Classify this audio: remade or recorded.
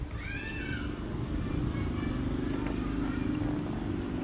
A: recorded